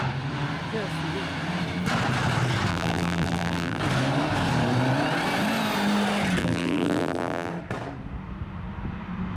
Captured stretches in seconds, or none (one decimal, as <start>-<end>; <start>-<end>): 0.0-2.7; 3.8-6.4; 7.5-9.4